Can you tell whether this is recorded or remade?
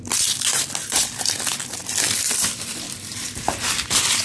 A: remade